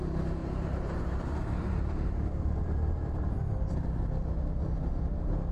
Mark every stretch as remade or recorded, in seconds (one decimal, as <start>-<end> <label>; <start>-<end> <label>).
0.0-0.4 recorded; 0.4-3.7 remade; 3.7-5.5 recorded